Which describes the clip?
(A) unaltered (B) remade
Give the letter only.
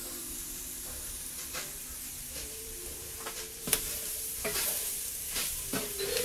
B